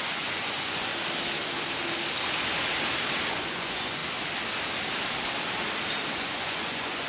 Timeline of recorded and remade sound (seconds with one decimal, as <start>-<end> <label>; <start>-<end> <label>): 0.0-0.9 remade; 0.9-3.3 recorded; 3.3-4.0 remade; 4.0-6.1 recorded; 6.1-7.1 remade

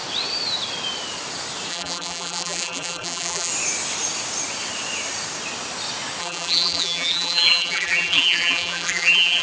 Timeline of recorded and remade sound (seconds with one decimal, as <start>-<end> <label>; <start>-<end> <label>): 0.0-1.7 recorded; 1.7-3.5 remade; 3.5-6.2 recorded; 6.2-9.4 remade

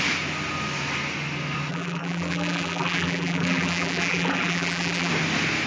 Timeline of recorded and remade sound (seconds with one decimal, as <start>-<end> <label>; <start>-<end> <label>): 0.0-1.7 recorded; 1.7-5.1 remade; 5.1-5.7 recorded

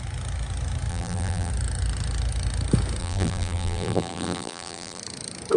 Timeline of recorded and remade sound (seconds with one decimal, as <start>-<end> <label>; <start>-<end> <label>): 0.0-0.9 recorded; 0.9-1.5 remade; 1.5-3.0 recorded; 3.0-5.0 remade; 5.0-5.6 recorded

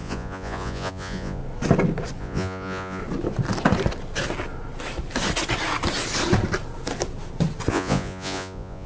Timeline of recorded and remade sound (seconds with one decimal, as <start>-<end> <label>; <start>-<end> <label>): 0.0-1.4 remade; 1.4-2.2 recorded; 2.2-3.0 remade; 3.0-7.7 recorded; 7.7-8.9 remade

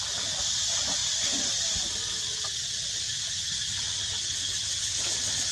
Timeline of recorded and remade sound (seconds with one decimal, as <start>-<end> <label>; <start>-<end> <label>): 0.0-5.5 recorded